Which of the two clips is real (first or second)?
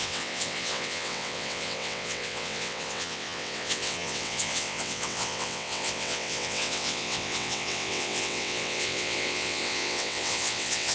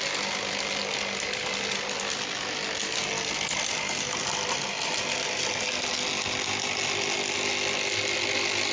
second